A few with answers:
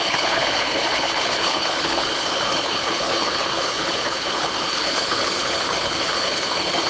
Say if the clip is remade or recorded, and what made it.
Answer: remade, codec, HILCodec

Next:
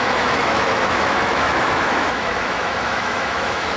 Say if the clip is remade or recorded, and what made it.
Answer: remade, autoencoder, DAC-VAE